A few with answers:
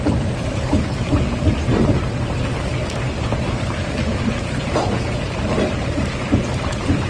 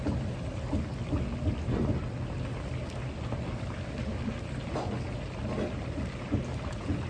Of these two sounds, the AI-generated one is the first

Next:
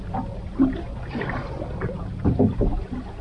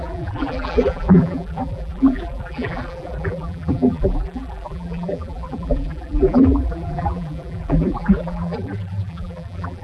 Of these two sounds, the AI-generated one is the second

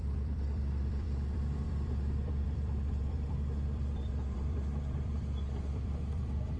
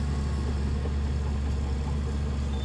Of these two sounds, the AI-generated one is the first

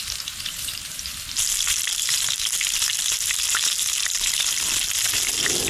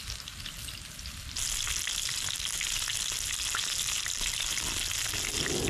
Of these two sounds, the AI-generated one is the first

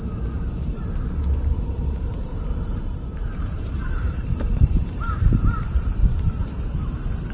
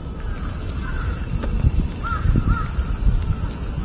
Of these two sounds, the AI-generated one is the first